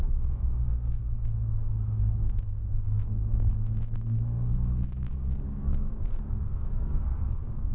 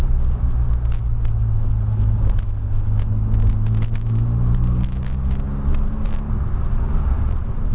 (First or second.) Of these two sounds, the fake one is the first